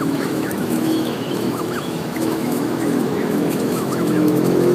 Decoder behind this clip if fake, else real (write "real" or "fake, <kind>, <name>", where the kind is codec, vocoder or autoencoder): fake, autoencoder, DAC-VAE